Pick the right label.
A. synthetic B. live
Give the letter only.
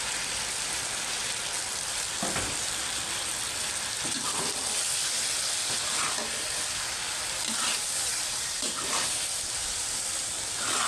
A